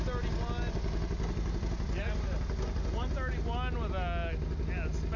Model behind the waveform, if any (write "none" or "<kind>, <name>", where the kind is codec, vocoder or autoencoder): none